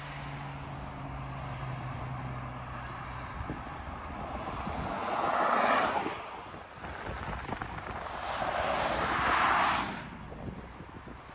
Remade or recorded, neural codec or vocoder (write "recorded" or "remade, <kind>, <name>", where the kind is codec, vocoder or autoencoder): recorded